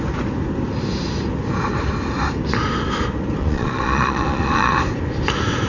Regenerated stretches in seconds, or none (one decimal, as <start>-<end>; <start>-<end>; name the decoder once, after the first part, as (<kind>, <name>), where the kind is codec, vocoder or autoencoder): 3.4-4.8 (vocoder, Vocos)